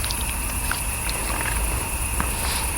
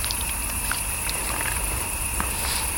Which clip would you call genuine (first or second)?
first